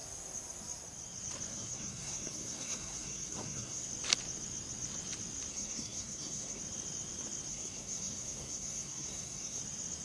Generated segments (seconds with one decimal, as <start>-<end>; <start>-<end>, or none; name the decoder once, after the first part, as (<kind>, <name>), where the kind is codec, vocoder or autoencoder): 1.5-3.9 (codec, SNAC); 5.5-6.6; 7.5-9.6